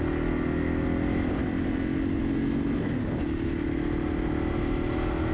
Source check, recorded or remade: recorded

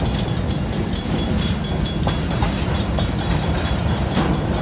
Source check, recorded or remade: recorded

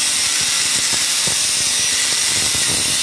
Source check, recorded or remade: recorded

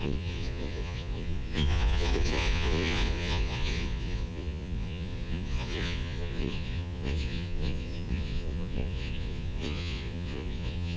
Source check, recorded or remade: remade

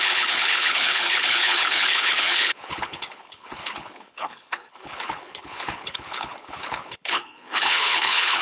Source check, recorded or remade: remade